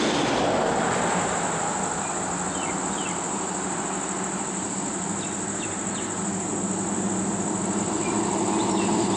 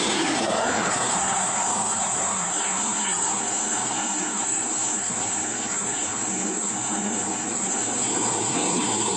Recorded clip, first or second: first